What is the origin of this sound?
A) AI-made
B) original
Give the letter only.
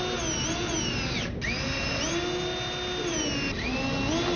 B